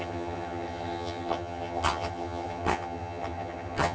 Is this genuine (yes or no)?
no